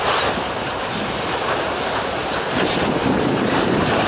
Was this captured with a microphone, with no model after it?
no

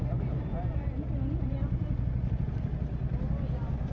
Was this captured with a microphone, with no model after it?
yes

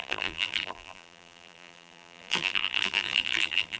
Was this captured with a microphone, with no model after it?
no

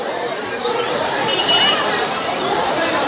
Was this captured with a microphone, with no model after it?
no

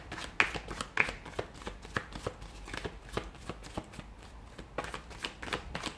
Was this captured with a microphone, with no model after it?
yes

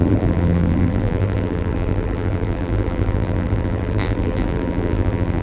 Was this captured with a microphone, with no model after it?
no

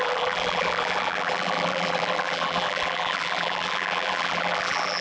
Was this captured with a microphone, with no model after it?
no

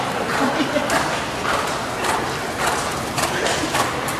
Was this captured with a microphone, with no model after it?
no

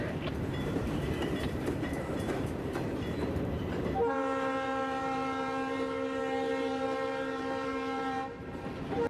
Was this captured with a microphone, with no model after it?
no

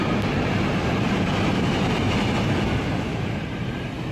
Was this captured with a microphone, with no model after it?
no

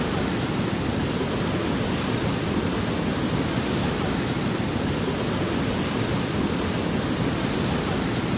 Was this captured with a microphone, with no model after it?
no